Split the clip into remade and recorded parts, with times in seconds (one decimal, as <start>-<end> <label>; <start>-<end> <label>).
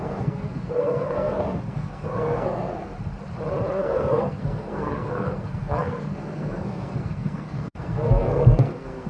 0.0-2.9 remade; 2.9-3.8 recorded; 3.8-9.1 remade